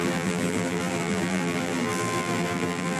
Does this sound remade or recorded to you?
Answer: remade